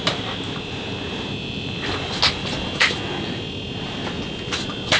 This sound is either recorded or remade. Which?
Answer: recorded